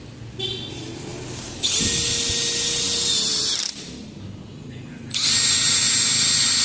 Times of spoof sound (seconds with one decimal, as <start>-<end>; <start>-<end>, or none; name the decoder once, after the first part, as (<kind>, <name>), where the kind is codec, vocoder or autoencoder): none